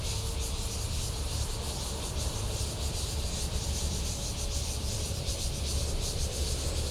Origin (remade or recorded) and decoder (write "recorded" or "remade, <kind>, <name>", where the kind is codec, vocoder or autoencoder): recorded